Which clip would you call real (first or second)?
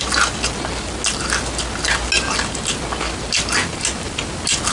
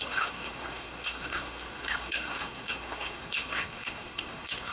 first